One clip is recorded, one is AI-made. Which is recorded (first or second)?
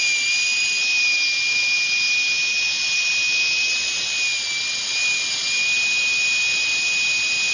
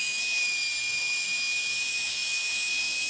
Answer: first